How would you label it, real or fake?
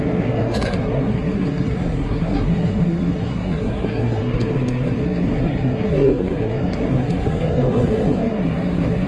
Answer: fake